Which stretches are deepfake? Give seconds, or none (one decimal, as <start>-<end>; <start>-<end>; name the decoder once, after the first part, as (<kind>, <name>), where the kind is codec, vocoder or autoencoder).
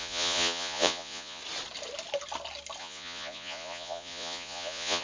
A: 0.0-1.4 (vocoder, Vocos); 2.8-5.0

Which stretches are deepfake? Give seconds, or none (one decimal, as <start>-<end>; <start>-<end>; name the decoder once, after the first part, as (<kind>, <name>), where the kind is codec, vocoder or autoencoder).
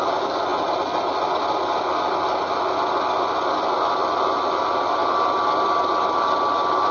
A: none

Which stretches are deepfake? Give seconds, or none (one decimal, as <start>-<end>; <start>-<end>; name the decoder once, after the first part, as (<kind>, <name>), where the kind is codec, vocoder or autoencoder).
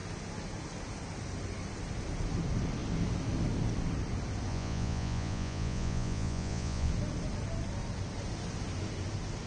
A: 4.5-6.9 (vocoder, Vocos)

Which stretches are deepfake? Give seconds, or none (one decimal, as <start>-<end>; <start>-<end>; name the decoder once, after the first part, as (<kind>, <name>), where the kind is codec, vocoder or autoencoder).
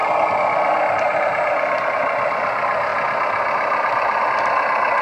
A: none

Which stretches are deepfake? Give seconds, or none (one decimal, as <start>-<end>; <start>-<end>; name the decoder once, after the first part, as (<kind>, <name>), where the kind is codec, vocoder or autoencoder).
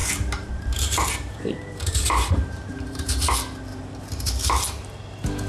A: 0.0-3.3 (vocoder, BigVGAN v2); 3.7-4.2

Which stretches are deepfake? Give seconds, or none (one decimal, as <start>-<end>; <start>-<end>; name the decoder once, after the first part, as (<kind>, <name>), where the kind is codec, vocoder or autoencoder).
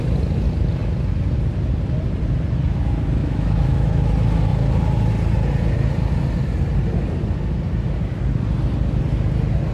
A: 3.2-4.1 (autoencoder, DAC-VAE)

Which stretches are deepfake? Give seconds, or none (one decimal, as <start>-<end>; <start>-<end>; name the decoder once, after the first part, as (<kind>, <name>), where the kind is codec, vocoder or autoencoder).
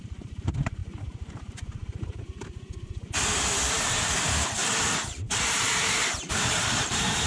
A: 0.0-0.8 (vocoder, BigVGAN v2); 4.0-4.6; 5.3-7.3